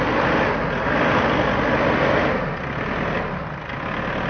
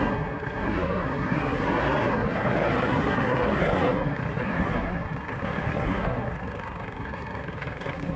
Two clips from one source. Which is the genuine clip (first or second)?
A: first